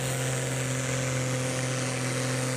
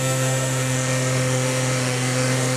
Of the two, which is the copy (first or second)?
second